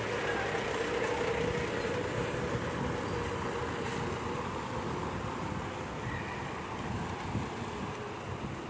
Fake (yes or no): no